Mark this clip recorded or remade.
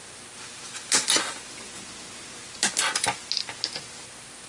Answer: recorded